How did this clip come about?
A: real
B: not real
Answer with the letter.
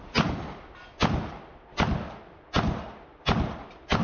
A